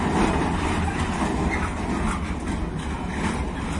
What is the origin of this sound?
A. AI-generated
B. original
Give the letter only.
B